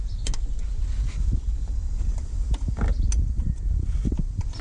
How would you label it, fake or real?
real